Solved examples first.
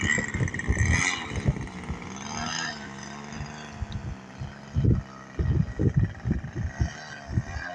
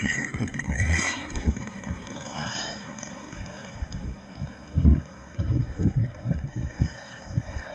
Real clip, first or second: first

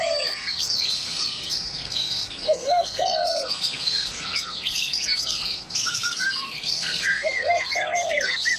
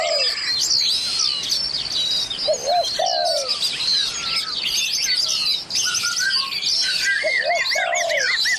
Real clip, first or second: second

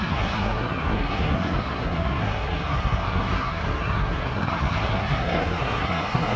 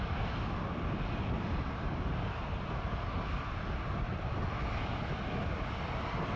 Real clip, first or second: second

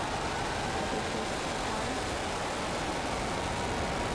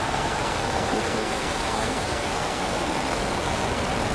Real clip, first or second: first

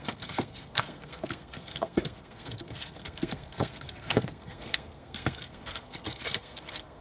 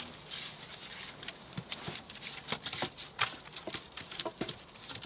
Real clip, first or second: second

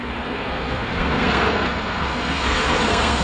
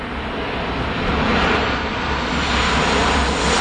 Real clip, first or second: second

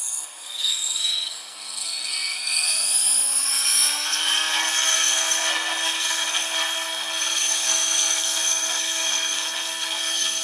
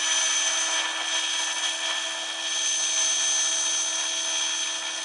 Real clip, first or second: second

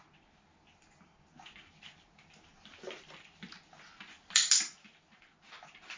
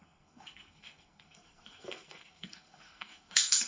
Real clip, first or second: first